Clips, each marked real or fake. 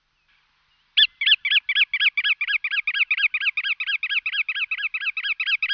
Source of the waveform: real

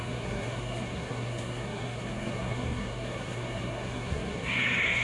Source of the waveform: fake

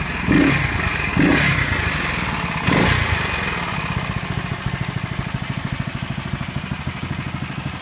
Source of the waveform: real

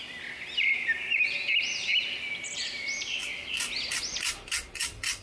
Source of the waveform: real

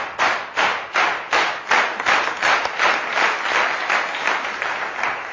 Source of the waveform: real